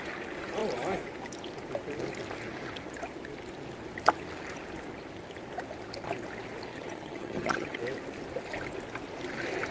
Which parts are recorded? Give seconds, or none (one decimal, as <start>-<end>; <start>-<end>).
0.0-6.7; 7.8-9.7